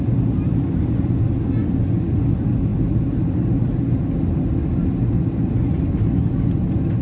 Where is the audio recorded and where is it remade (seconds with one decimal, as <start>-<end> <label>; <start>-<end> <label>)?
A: 0.0-7.0 recorded